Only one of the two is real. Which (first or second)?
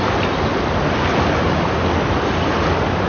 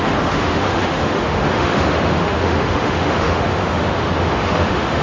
first